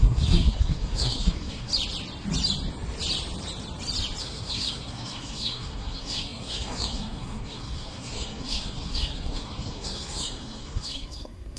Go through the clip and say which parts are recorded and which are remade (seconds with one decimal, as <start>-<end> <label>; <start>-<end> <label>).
0.0-1.7 remade; 1.7-4.2 recorded; 4.2-11.6 remade